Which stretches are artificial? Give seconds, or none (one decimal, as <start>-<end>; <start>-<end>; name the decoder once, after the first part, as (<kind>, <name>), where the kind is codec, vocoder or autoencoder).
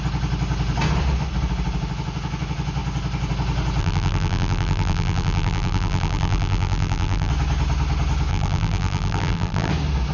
3.8-7.3 (vocoder, BigVGAN v2); 8.3-9.7